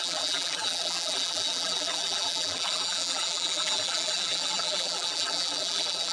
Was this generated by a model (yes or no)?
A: yes